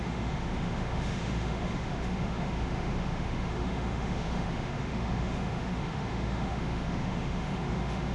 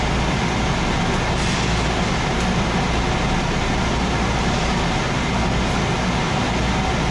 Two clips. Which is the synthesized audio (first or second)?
first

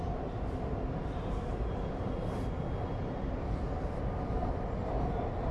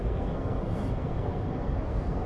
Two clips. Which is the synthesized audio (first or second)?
second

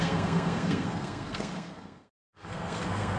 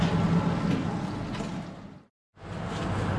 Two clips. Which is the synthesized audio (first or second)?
first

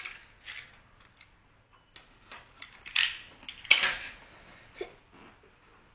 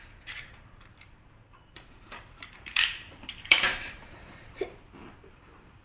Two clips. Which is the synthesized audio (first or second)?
second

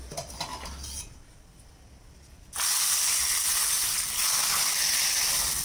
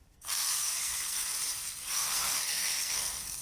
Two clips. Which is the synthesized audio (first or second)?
second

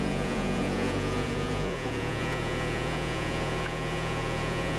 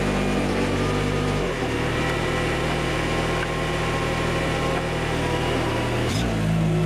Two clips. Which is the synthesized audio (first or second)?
first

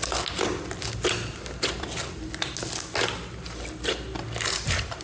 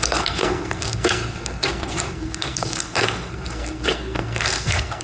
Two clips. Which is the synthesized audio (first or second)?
second